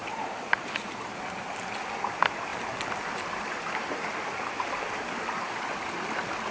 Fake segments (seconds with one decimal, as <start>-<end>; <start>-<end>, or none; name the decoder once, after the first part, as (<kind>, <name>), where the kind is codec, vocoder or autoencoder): 0.0-1.0 (vocoder, BigVGAN v2)